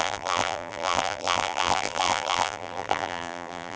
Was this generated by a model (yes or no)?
yes